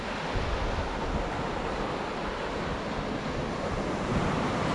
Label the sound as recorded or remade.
recorded